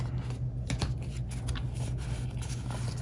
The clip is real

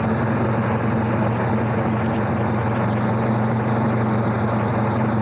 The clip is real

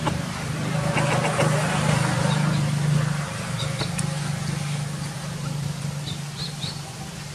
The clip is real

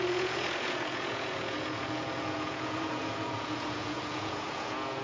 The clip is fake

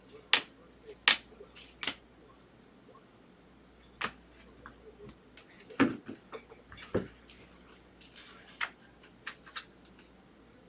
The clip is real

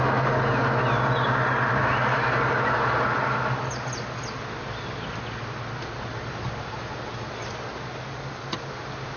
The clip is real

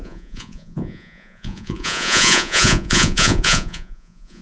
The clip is fake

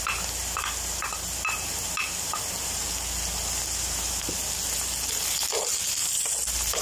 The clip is real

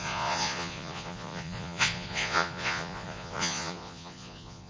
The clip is fake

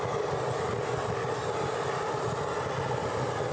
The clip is real